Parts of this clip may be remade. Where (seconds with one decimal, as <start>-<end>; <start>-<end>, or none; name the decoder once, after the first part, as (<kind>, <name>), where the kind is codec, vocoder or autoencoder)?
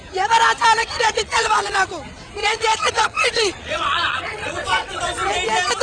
0.8-1.9 (vocoder, WaveNeXt); 2.4-5.0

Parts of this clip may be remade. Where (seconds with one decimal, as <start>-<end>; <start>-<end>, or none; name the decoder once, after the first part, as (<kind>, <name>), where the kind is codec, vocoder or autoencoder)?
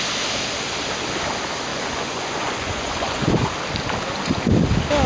1.7-3.5 (vocoder, Vocos)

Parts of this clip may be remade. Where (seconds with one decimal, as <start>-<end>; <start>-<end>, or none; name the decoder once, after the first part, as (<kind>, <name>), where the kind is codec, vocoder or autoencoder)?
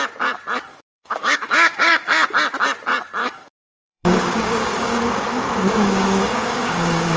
0.7-2.3 (codec, DAC); 3.2-7.2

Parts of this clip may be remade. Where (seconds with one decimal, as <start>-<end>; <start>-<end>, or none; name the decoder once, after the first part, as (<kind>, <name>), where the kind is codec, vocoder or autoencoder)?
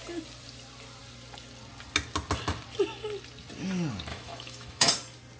4.1-4.9 (autoencoder, DAC-VAE)